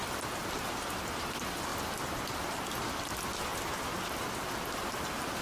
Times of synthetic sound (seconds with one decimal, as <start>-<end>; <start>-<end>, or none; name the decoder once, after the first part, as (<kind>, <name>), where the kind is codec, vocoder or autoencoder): 0.4-0.9 (vocoder, BigVGAN v2); 1.7-2.9